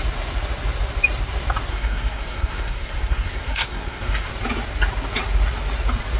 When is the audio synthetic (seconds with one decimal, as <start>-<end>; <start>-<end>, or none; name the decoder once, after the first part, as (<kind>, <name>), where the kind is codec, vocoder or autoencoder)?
1.7-4.3 (codec, SNAC)